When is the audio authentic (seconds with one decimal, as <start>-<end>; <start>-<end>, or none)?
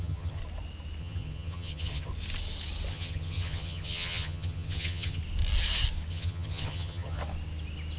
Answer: 0.4-1.0; 2.1-2.9; 5.2-6.1; 7.2-8.0